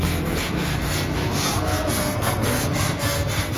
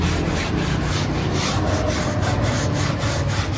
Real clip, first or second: second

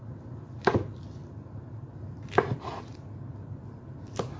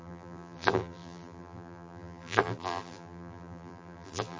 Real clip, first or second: first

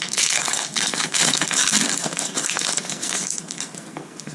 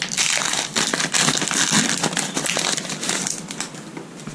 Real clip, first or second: second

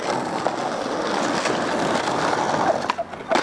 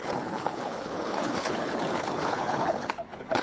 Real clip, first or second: first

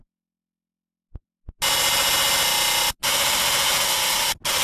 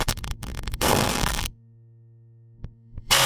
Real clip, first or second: first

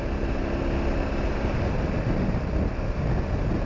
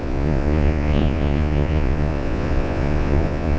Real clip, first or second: first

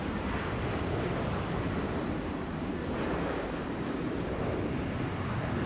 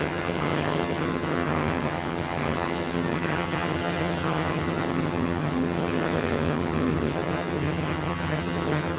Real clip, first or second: first